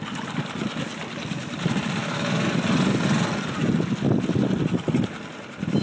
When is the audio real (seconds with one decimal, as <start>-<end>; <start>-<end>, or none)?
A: 0.0-2.0; 2.5-5.8